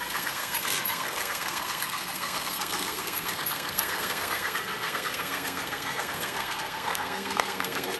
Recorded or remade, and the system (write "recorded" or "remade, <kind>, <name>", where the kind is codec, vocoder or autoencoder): remade, codec, SNAC